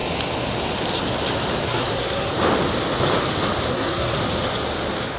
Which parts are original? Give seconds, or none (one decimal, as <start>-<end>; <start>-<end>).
0.0-1.6; 2.3-3.7; 4.2-5.2